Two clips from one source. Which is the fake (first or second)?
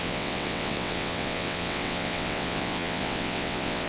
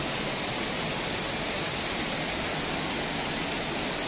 first